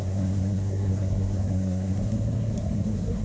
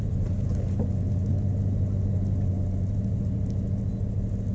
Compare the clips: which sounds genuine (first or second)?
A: second